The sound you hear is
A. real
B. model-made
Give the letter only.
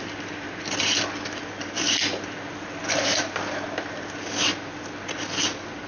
A